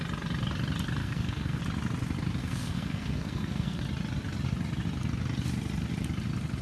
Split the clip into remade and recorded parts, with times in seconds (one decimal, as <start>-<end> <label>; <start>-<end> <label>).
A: 0.0-1.0 recorded; 1.0-1.6 remade; 1.6-2.4 recorded; 2.4-3.8 remade; 3.8-6.6 recorded